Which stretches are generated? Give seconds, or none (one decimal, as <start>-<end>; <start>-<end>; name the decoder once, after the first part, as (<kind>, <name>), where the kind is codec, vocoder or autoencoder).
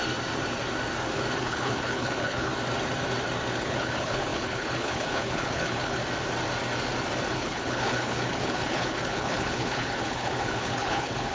1.4-2.5 (codec, HILCodec); 3.6-6.0; 7.3-11.3